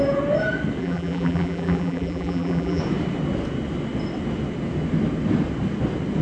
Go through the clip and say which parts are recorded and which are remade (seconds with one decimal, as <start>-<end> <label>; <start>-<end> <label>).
0.0-0.8 recorded; 0.8-2.8 remade; 2.8-6.2 recorded